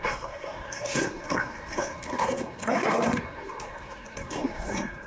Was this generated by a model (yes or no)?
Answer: yes